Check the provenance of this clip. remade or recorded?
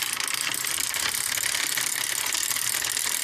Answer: recorded